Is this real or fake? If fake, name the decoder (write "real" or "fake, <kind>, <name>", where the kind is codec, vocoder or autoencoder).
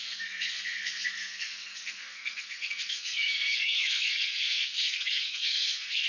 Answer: fake, codec, SNAC